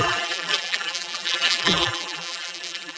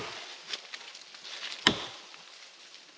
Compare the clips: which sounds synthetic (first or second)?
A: first